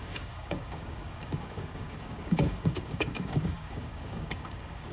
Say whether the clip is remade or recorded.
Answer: remade